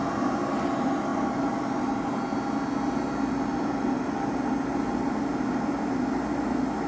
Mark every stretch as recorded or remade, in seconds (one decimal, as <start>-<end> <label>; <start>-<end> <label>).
0.0-6.9 recorded